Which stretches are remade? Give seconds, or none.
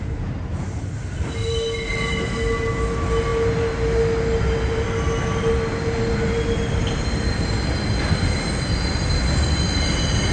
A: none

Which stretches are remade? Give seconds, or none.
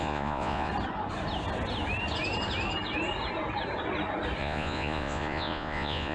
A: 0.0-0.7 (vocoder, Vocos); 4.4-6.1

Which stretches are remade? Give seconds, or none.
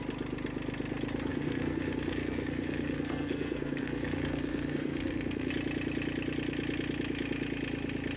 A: 1.3-5.5 (codec, SNAC)